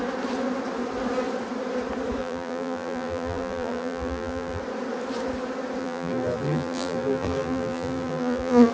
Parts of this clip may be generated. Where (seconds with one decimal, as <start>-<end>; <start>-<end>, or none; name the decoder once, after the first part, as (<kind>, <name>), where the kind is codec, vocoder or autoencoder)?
2.2-4.6 (vocoder, BigVGAN v2); 5.8-8.7